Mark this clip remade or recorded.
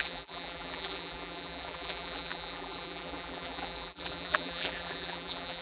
remade